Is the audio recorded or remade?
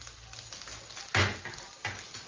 recorded